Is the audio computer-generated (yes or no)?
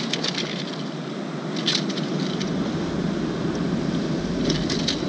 no